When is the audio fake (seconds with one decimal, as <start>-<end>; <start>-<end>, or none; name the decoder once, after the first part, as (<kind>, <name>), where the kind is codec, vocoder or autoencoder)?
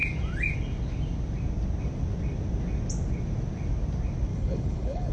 4.3-5.1 (codec, HILCodec)